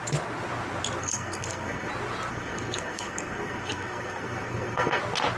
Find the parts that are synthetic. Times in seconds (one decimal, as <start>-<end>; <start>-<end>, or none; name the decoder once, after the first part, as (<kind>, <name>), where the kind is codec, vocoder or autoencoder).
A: 1.0-1.9 (codec, SNAC); 2.3-5.0